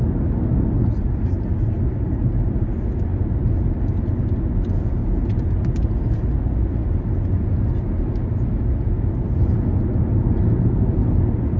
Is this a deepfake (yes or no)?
no